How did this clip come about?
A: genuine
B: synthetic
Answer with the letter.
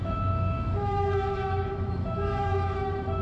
B